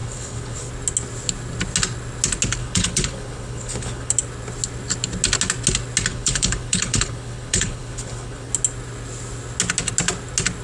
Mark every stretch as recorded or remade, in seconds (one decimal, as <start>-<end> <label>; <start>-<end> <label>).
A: 0.0-0.7 remade; 0.7-2.6 recorded; 2.6-4.1 remade; 4.1-6.1 recorded; 6.1-8.5 remade; 8.5-10.6 recorded